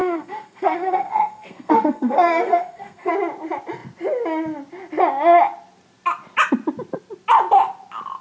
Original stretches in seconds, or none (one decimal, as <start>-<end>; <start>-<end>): 3.1-8.2